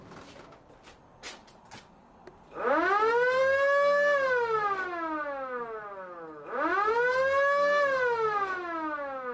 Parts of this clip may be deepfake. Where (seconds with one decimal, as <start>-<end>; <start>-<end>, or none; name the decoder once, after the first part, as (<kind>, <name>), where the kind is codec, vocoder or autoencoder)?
none